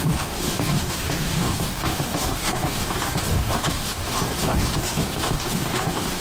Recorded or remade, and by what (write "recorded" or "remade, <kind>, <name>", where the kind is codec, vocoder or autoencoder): remade, codec, DAC